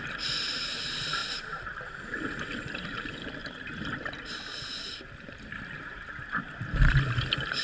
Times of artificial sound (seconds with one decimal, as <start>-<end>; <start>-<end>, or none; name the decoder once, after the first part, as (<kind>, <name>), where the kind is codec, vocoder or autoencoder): 1.2-2.0 (vocoder, BigVGAN v2)